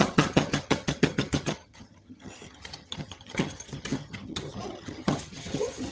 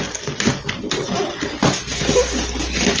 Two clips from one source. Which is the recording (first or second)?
second